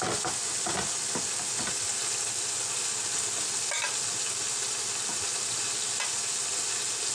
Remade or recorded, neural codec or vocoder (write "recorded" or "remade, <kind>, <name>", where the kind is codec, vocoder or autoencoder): recorded